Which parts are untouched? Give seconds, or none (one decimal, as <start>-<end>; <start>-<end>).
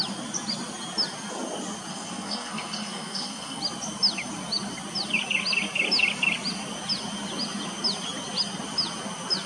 0.0-1.9; 3.6-9.5